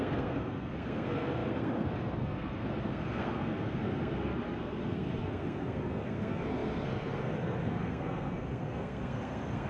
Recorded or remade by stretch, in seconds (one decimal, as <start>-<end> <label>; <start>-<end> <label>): 0.0-9.7 remade